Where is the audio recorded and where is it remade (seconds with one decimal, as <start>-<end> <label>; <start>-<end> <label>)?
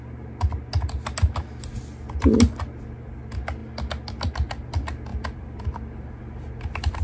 0.0-5.1 recorded; 5.1-7.0 remade